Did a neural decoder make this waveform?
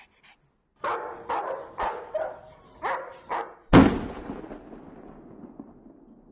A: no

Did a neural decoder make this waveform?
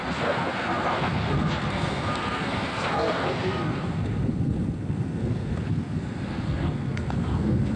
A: yes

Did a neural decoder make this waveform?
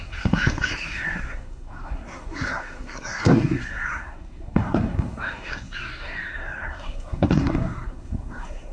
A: yes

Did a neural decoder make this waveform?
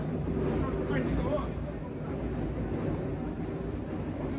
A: no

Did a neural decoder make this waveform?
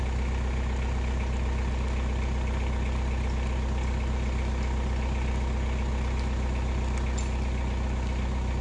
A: no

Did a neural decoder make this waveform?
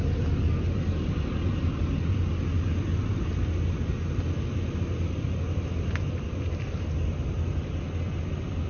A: no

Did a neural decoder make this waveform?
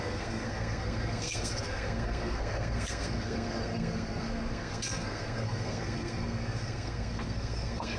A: yes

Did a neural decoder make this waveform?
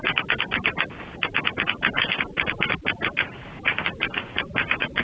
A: no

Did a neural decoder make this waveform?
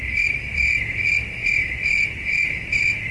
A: no